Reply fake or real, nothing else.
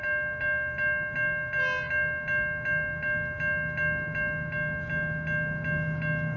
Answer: real